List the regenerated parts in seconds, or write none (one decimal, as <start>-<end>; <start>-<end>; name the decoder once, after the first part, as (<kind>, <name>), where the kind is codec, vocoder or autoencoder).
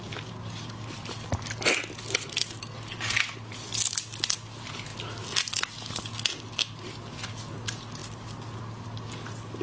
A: none